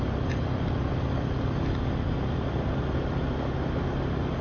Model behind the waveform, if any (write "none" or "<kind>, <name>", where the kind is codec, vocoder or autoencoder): none